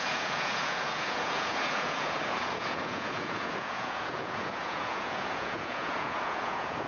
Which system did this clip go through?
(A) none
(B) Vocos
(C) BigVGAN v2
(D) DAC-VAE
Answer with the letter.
B